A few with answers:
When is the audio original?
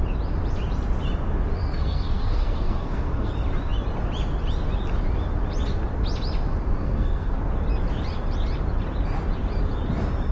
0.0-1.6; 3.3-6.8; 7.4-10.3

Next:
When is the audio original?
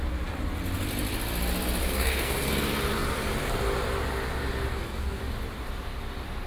0.0-1.8; 2.5-4.7; 5.2-6.5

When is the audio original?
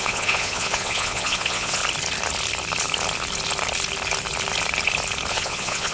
1.8-5.3